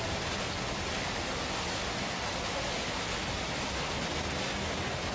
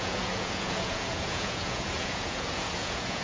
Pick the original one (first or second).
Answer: first